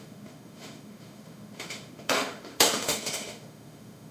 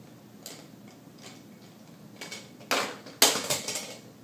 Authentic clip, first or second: second